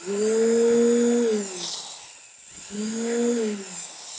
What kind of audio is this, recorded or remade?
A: recorded